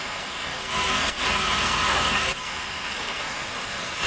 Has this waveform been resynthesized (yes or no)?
yes